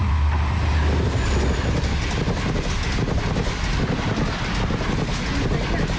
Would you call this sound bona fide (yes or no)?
yes